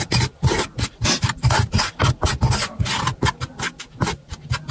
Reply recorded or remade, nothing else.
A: recorded